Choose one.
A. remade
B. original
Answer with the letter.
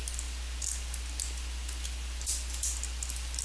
B